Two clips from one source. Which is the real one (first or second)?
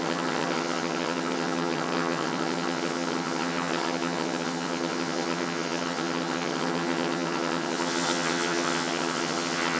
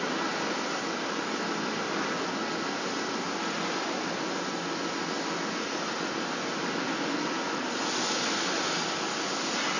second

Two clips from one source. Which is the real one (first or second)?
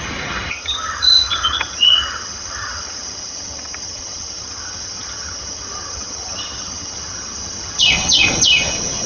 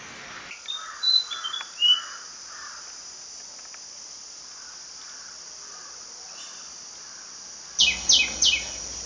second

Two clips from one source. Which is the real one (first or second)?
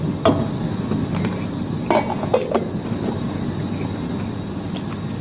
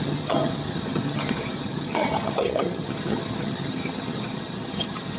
first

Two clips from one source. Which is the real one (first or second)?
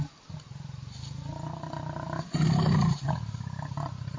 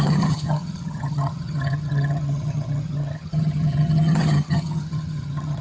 first